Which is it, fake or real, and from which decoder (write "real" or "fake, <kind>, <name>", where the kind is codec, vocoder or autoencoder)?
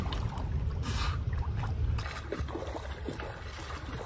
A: real